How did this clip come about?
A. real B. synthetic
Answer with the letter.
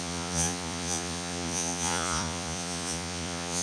B